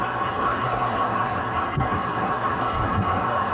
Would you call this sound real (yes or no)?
no